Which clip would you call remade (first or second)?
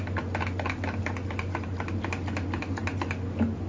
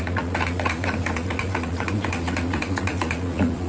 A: second